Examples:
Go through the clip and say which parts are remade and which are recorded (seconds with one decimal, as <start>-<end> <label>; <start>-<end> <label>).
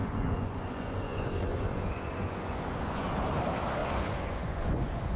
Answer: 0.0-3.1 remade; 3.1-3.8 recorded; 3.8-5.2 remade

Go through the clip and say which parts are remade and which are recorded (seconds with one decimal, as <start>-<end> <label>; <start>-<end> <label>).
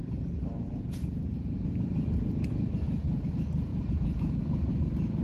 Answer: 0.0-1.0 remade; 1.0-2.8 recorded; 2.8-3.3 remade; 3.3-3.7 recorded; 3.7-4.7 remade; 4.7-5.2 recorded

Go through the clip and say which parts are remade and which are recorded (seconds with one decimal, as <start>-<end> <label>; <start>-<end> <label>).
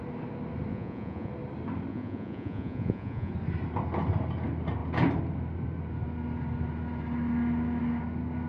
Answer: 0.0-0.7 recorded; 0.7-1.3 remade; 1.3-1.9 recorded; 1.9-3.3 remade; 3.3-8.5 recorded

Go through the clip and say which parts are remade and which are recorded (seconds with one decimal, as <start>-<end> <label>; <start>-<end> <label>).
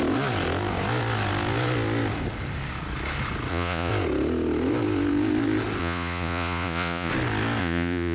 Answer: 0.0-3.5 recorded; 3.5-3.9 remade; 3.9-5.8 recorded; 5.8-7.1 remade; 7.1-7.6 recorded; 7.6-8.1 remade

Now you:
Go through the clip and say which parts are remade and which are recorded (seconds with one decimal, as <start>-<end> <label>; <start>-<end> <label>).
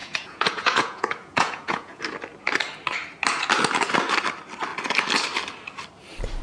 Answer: 0.0-2.0 remade; 2.0-6.4 recorded